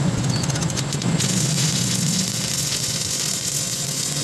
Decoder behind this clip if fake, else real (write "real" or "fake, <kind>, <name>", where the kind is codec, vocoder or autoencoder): fake, vocoder, Vocos